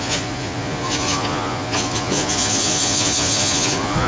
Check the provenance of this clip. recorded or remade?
remade